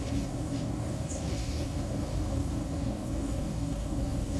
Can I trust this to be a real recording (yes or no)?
no